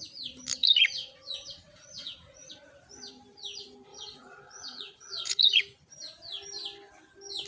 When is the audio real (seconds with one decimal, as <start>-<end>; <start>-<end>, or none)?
0.0-0.6; 2.5-3.9; 5.6-7.5

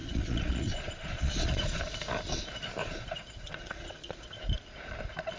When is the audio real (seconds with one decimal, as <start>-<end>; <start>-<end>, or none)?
1.8-2.8; 4.4-5.4

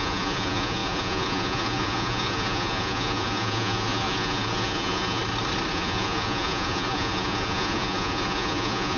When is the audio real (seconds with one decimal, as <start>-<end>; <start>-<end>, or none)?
5.2-5.7

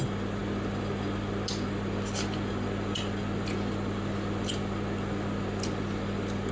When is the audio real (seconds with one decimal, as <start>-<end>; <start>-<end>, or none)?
0.0-6.5

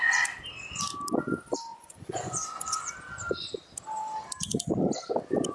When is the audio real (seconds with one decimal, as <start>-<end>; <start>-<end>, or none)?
0.0-1.7; 2.9-5.5